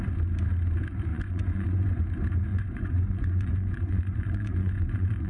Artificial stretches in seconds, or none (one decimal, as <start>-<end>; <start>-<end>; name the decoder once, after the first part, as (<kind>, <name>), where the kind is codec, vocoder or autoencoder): 1.1-2.0 (vocoder, Vocos); 2.5-5.3